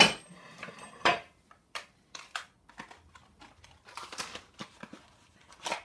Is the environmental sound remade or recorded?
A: recorded